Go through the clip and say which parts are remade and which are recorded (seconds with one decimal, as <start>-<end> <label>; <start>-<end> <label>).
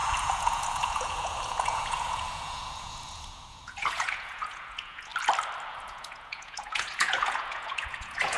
0.0-5.1 remade; 5.1-5.7 recorded; 5.7-8.4 remade